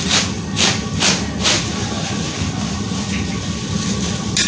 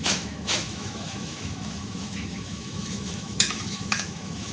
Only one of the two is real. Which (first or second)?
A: first